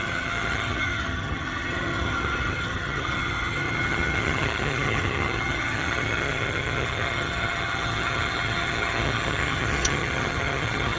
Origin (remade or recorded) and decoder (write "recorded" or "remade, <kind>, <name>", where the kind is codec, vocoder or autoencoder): remade, vocoder, HiFi-GAN